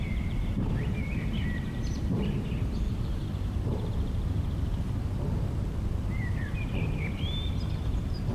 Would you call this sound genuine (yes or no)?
no